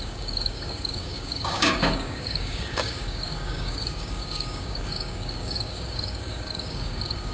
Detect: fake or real fake